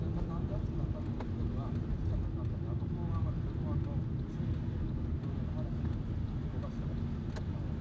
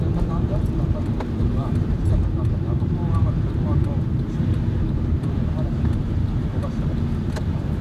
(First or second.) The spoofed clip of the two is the second